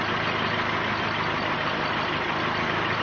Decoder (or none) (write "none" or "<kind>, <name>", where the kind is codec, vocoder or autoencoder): none